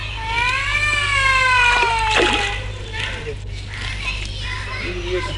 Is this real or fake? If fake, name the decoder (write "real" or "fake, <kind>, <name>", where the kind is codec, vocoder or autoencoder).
real